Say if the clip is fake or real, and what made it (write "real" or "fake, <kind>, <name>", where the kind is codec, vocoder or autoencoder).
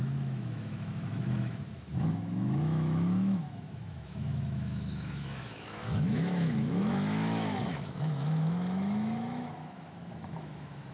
fake, autoencoder, DAC-VAE